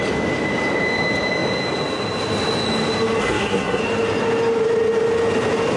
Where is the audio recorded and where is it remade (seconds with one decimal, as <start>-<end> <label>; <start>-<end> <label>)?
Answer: 0.0-3.2 recorded; 3.2-3.8 remade; 3.8-5.8 recorded